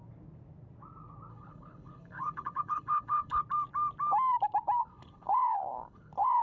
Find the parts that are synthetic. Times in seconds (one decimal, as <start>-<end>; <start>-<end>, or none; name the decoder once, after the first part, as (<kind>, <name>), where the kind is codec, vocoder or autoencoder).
1.3-3.4 (codec, HILCodec); 4.8-6.4